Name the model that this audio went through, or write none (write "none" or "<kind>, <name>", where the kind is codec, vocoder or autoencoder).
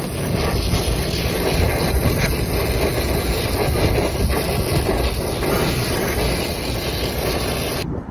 none